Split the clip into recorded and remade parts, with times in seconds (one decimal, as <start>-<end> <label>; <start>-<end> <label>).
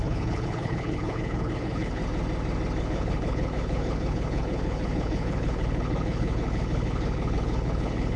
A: 0.0-2.0 remade; 2.0-2.8 recorded; 2.8-8.2 remade